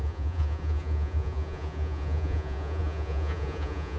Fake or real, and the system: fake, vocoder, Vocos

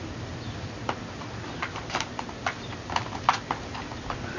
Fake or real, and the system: real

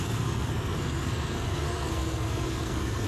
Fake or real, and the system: fake, codec, SNAC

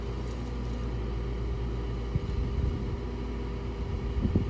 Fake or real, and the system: real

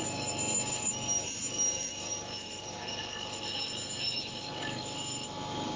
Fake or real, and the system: fake, autoencoder, DAC-VAE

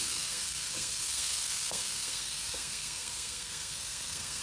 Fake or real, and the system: fake, codec, SNAC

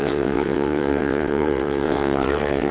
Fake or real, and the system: fake, vocoder, WaveNeXt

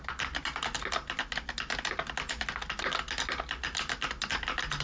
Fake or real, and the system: real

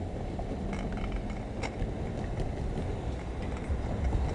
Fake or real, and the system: real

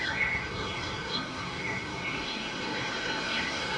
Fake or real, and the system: fake, codec, SNAC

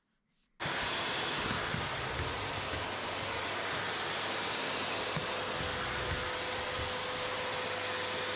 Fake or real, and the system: real